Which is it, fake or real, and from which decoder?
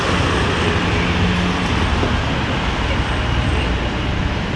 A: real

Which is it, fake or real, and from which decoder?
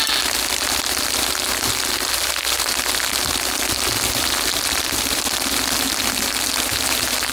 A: real